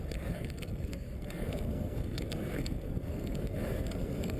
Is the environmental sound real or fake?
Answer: fake